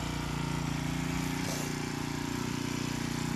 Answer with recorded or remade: recorded